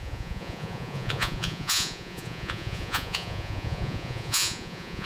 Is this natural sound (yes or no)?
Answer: no